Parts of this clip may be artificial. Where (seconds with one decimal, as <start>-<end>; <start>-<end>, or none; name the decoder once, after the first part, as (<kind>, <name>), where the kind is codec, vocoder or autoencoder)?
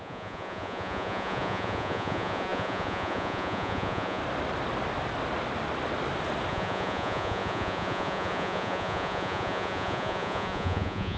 0.0-4.2 (vocoder, Vocos); 6.5-11.2